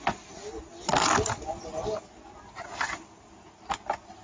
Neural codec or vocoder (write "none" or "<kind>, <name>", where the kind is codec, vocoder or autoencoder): none